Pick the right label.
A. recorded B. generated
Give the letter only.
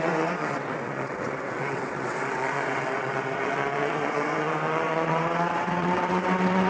B